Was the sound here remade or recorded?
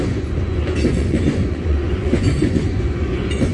remade